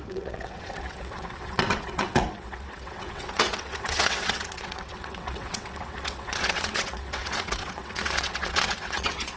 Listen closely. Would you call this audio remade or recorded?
remade